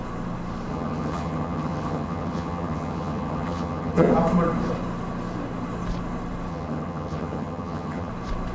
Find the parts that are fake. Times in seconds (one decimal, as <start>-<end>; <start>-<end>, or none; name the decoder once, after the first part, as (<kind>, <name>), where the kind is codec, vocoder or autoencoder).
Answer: 0.7-4.1 (vocoder, HiFi-GAN); 6.5-8.1